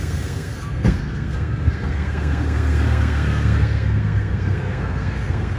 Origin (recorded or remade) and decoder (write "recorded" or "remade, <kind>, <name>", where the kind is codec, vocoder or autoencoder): remade, codec, SNAC